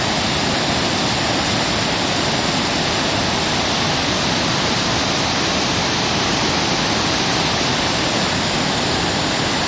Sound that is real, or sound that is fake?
real